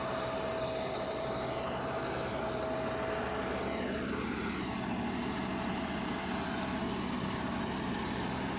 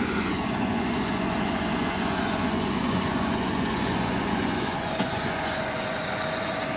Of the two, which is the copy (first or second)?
second